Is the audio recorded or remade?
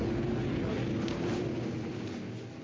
recorded